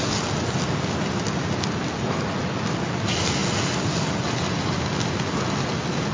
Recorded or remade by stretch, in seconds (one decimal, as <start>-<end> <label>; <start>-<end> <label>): 0.0-6.1 recorded